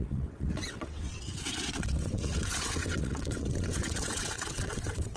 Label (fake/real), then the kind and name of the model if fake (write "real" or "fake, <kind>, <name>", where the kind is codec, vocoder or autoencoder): fake, vocoder, WaveNeXt